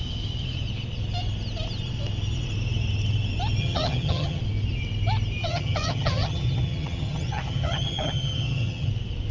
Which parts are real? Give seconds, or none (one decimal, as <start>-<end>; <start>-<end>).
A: 0.0-3.6; 4.4-5.4; 8.9-9.3